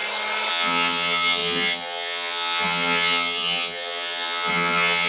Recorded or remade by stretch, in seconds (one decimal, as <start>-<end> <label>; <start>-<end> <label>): 0.0-0.5 recorded; 0.5-5.1 remade